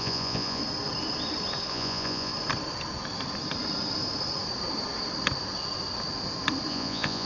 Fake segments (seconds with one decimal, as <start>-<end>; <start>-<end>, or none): 0.0-0.6; 1.7-2.3; 6.7-7.3